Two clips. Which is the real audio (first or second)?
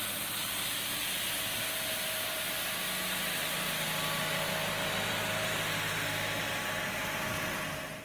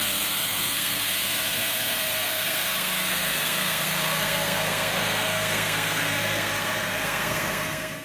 first